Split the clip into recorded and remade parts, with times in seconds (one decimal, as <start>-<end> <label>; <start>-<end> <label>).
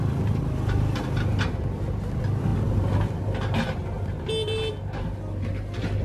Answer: 0.0-6.0 recorded